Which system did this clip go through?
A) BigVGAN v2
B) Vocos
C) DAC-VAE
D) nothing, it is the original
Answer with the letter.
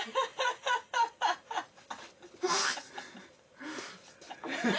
D